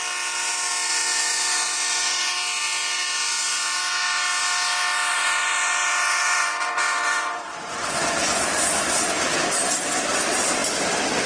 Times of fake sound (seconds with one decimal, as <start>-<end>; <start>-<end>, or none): 0.9-2.3; 5.1-9.1